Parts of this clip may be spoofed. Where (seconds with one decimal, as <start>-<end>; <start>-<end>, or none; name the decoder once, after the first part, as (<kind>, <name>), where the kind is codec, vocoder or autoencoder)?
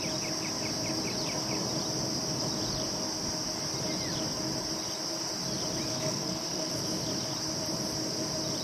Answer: 5.9-6.7 (codec, SNAC)